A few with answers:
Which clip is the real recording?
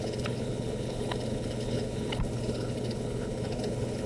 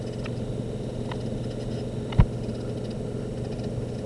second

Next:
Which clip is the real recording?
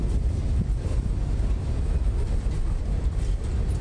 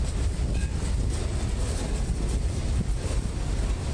first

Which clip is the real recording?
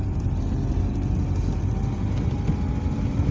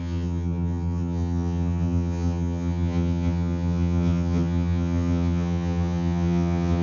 first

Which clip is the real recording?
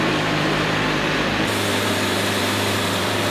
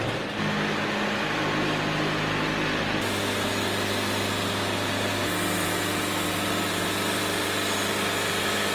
second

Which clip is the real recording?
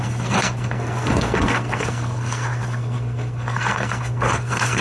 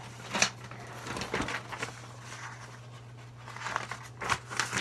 second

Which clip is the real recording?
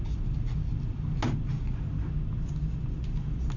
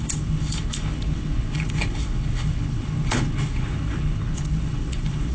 first